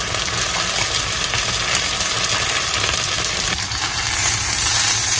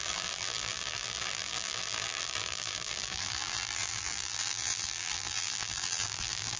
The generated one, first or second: second